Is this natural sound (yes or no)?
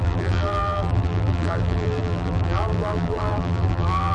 no